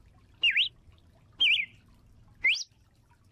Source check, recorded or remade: recorded